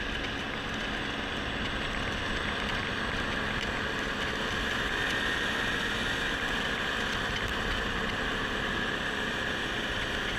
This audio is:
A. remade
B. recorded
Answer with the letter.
B